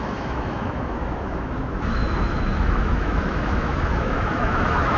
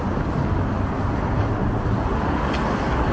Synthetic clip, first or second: first